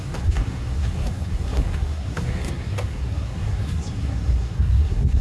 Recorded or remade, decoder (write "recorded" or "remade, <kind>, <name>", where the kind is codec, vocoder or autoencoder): remade, codec, SNAC